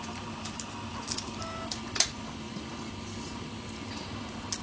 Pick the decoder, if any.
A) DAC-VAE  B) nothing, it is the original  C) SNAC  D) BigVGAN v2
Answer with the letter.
B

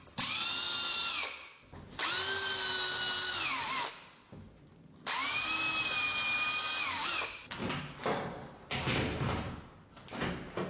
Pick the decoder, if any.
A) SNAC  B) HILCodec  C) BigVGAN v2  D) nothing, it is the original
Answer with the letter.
D